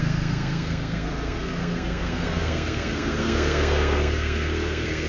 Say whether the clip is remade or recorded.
remade